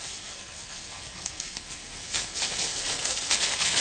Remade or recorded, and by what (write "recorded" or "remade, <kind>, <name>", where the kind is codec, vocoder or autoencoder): remade, codec, SNAC